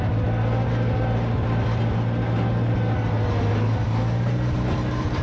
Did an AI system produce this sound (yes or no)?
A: no